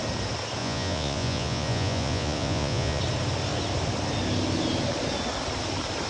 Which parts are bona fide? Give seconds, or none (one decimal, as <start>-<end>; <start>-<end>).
0.0-0.6; 3.0-6.1